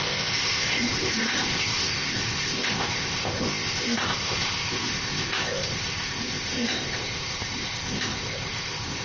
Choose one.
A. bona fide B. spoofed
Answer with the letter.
B